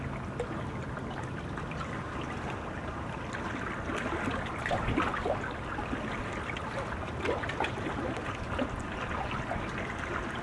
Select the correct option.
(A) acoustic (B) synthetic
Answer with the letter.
A